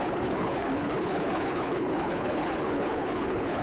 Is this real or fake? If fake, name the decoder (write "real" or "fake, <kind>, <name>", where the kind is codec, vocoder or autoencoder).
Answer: fake, codec, HILCodec